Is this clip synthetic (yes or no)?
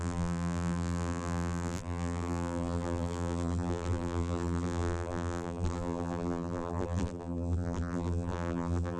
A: yes